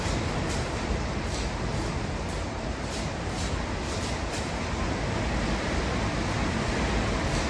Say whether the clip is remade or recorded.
recorded